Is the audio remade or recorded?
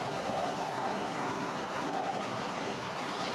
remade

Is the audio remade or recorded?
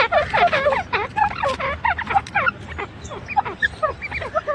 recorded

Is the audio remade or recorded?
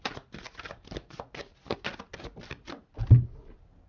recorded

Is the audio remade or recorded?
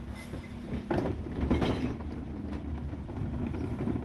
recorded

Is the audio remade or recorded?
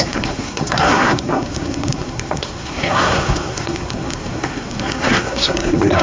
remade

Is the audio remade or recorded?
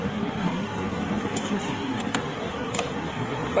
remade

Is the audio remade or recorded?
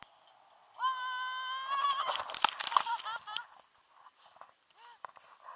recorded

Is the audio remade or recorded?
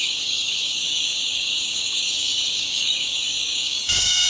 remade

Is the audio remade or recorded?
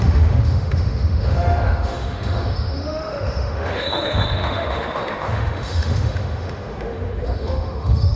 remade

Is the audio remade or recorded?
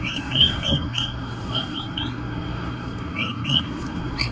remade